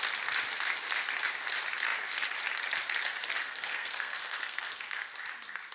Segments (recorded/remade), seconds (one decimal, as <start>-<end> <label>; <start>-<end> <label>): 0.0-3.4 recorded; 3.4-5.1 remade; 5.1-5.7 recorded